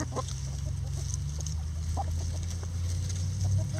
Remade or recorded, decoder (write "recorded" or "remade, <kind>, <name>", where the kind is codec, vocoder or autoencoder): recorded